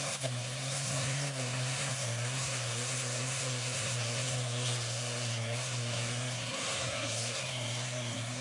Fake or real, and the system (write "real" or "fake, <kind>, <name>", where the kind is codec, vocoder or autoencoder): fake, codec, SNAC